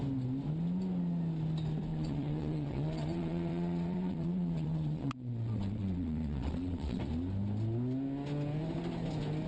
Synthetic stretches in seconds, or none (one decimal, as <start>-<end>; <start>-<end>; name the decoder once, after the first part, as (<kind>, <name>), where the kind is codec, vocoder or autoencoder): 1.9-7.0 (vocoder, WaveNeXt)